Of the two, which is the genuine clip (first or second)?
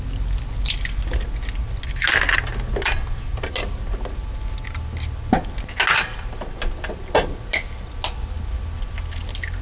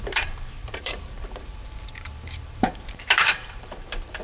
first